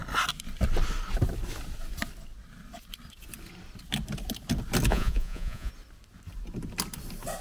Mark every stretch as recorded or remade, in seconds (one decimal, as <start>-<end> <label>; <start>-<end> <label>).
0.0-4.9 recorded; 4.9-5.7 remade; 5.7-7.4 recorded